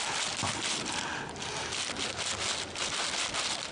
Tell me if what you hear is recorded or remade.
recorded